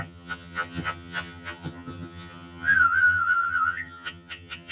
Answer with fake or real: fake